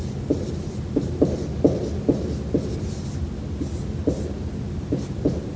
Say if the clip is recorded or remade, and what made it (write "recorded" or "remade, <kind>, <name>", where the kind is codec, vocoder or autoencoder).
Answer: recorded